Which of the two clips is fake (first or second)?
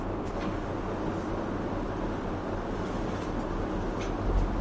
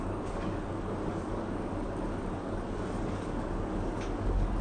second